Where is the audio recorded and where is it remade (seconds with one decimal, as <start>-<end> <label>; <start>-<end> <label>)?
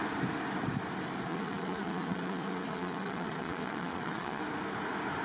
0.0-1.3 recorded; 1.3-4.4 remade; 4.4-5.2 recorded